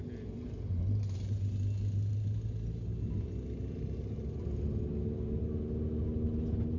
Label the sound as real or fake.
real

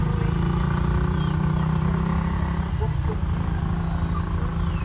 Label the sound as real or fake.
real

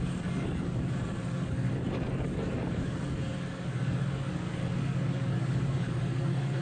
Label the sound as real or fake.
fake